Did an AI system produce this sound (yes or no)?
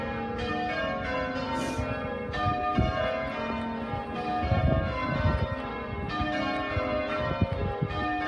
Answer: no